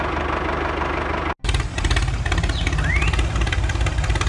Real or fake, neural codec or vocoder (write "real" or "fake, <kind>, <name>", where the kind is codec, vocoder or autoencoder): real